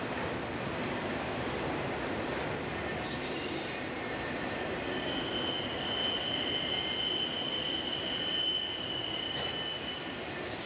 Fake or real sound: real